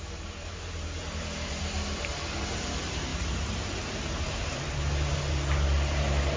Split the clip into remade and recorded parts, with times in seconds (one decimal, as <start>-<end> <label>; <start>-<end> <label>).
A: 0.0-0.5 recorded; 0.5-2.3 remade; 2.3-3.1 recorded; 3.1-4.8 remade; 4.8-6.4 recorded